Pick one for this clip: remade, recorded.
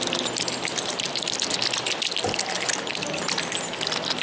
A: recorded